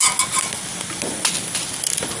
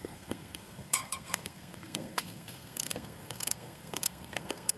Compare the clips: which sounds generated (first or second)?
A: second